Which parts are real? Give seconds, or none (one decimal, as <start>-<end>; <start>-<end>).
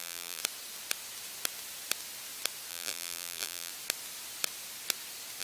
0.4-2.7; 3.7-5.4